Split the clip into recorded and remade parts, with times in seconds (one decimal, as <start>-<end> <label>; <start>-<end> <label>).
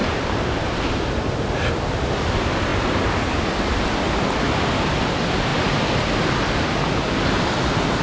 0.0-8.0 recorded